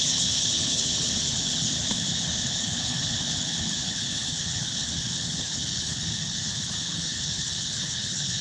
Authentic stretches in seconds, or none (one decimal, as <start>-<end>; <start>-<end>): none